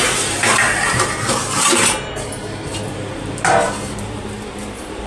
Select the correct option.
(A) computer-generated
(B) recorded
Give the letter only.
A